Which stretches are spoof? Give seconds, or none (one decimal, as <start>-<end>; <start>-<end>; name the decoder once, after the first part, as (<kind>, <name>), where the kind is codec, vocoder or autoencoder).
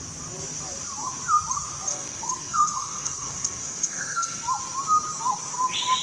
1.9-4.4 (codec, SNAC)